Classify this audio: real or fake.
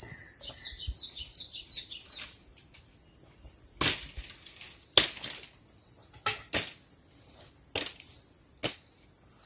real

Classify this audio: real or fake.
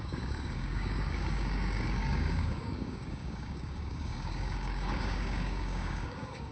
fake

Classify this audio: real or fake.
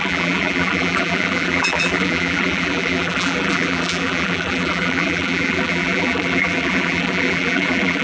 fake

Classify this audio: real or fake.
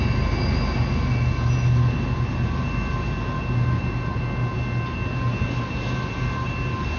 real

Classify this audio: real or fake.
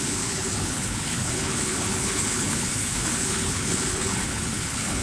fake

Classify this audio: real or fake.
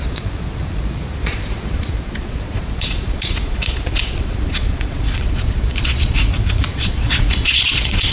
fake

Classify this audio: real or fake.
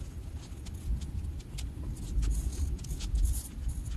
real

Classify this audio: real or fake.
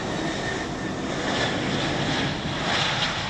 real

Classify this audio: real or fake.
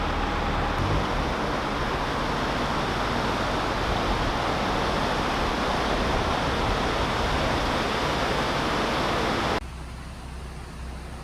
real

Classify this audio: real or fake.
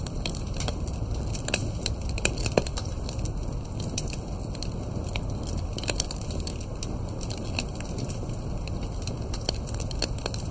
real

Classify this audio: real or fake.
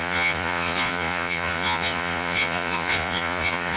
fake